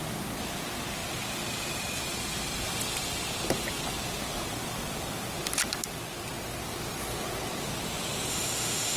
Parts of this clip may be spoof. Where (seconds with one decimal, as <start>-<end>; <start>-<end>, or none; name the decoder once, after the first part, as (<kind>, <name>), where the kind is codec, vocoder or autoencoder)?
8.3-9.0 (autoencoder, DAC-VAE)